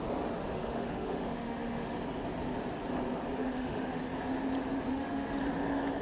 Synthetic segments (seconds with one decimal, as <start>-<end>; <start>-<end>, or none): 0.4-2.0; 3.4-4.0; 4.9-5.4